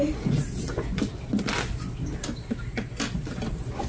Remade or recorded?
recorded